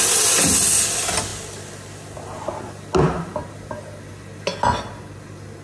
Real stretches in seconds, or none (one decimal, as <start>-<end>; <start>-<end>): 0.0-5.6